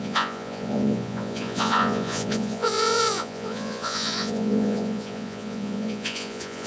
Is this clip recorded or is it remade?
remade